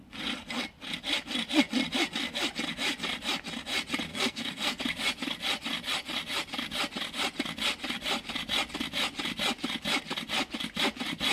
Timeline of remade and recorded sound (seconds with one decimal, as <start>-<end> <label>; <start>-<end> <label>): 0.0-4.1 recorded; 4.1-4.8 remade; 4.8-11.3 recorded